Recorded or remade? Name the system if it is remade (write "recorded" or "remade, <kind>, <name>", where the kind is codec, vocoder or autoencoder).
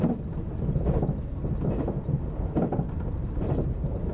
recorded